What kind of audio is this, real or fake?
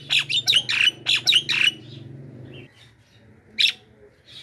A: real